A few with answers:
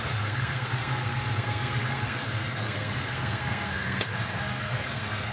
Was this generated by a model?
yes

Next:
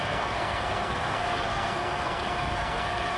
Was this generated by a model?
yes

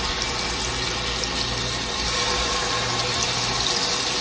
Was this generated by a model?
no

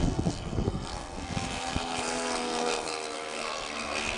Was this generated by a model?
yes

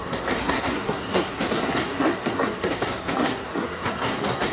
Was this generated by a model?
yes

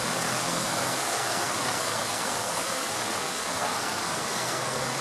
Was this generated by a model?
yes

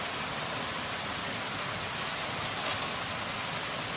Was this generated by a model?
no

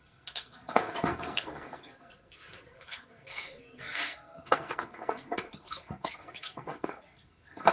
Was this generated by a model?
yes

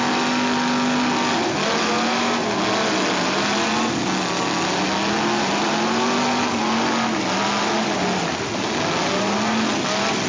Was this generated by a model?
no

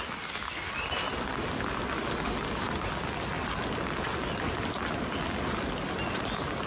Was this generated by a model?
no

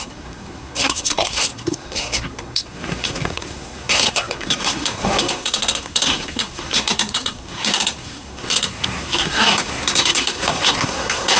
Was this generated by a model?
yes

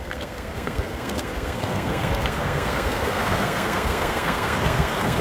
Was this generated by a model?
yes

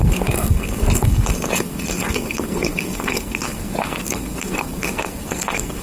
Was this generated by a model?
yes